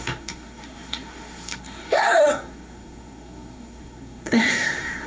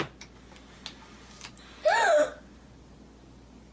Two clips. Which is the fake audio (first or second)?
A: first